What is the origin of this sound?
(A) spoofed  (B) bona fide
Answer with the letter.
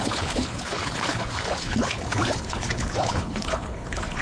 A